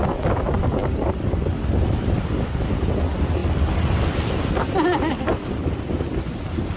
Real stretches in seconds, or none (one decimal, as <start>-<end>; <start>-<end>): 0.0-6.8